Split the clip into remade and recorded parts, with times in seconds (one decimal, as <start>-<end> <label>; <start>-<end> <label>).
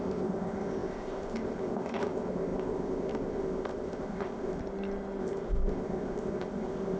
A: 0.0-4.6 remade; 4.6-5.2 recorded; 5.2-7.0 remade